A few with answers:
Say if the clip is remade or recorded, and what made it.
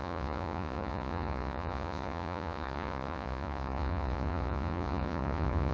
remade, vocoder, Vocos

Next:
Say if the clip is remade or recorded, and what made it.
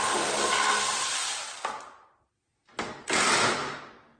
recorded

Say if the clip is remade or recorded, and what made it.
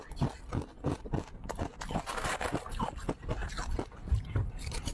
recorded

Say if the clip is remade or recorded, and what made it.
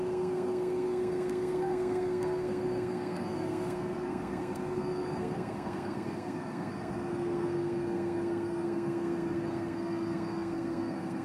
remade, codec, SNAC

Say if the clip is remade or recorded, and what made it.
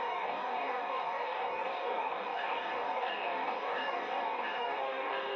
remade, codec, DAC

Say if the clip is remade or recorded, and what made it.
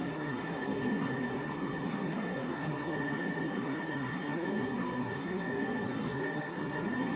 remade, codec, SNAC